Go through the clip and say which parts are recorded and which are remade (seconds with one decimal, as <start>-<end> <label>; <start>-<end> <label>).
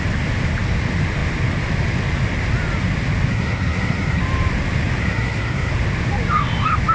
0.0-3.3 recorded; 3.3-4.2 remade; 4.2-5.0 recorded; 5.0-5.7 remade; 5.7-6.9 recorded